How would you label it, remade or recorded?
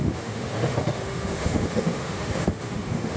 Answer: remade